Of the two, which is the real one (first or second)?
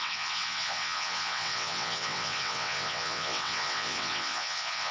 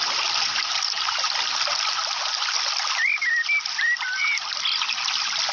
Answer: second